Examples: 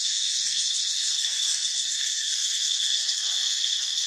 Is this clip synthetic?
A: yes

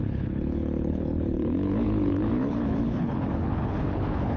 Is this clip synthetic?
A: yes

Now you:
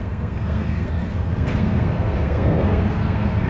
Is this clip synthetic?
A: yes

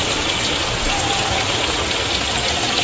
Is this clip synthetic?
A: no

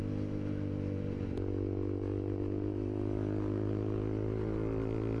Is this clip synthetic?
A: no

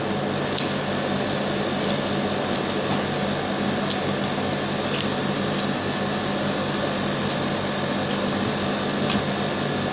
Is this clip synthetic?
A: no